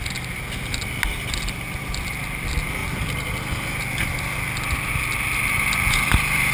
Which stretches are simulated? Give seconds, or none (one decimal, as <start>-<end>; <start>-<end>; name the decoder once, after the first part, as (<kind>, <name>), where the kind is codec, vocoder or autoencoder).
1.1-2.2 (vocoder, BigVGAN v2)